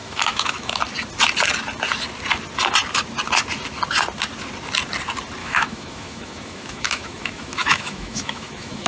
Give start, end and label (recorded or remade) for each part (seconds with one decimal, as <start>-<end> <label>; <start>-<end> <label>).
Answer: 0.0-0.8 remade; 0.8-5.4 recorded; 5.4-8.9 remade